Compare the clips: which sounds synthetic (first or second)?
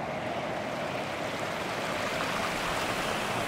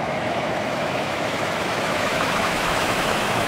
second